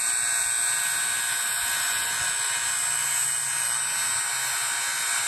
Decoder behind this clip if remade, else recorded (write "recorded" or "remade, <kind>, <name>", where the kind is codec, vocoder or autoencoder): recorded